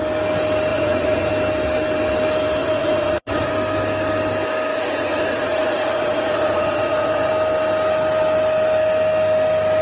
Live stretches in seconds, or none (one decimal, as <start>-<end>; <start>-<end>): 0.0-0.7; 1.3-2.6; 3.5-4.7; 7.3-9.8